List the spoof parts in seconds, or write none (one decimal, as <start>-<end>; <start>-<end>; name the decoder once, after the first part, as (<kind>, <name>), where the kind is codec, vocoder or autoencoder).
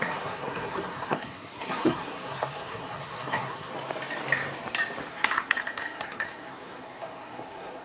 0.0-3.7 (codec, SNAC); 5.1-7.8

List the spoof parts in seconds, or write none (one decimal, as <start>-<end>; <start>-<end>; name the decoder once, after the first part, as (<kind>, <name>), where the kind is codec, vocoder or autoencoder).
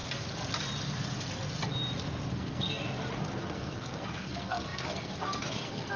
2.3-2.8 (codec, SNAC); 3.4-6.0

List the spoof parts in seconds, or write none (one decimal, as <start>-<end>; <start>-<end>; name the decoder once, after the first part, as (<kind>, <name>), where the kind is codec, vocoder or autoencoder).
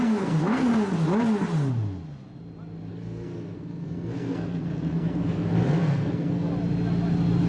0.0-0.7 (codec, SNAC); 2.9-6.5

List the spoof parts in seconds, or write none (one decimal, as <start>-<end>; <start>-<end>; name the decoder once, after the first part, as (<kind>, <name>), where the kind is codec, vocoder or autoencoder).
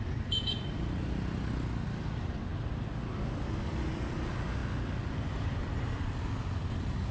none